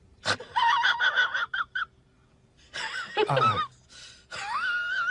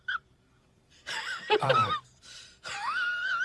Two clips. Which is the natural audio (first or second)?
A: first